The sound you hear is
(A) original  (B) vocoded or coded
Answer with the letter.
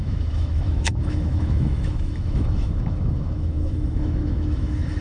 B